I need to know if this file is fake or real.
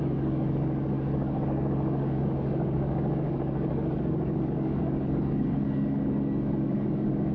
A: fake